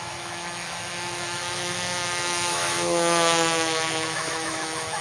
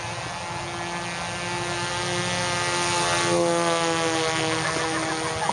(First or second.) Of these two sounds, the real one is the second